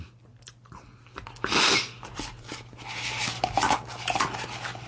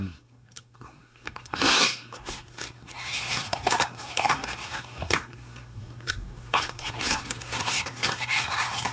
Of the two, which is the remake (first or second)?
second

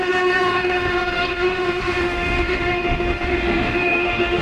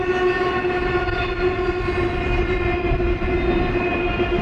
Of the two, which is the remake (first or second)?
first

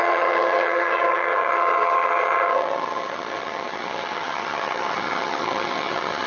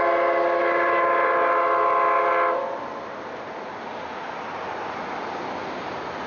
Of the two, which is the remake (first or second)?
first